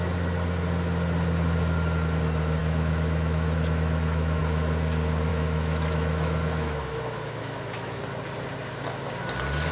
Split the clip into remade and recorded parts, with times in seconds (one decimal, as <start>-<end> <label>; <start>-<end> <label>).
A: 0.0-2.6 recorded; 2.6-4.4 remade; 4.4-5.3 recorded; 5.3-8.0 remade; 8.0-9.7 recorded